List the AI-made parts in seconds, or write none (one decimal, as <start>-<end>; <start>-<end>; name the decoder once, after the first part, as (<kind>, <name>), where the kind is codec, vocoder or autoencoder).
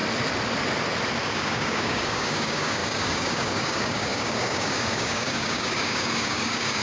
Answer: 1.2-6.8 (codec, DAC)